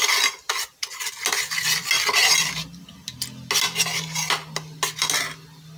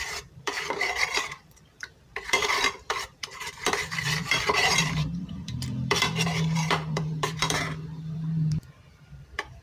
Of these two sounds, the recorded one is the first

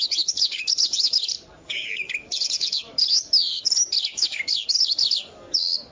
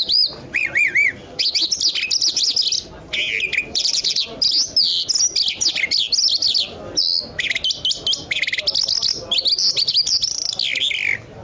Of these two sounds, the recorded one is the second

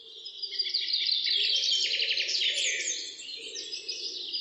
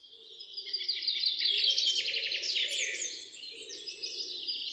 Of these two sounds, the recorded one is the second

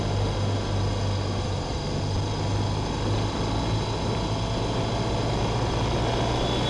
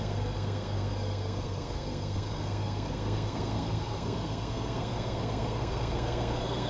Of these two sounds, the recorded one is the first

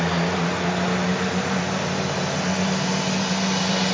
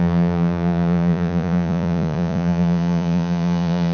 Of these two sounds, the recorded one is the first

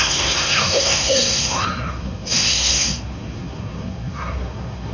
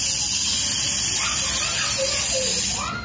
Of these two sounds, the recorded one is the second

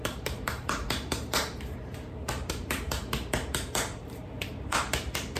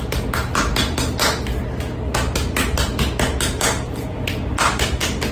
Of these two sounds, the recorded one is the second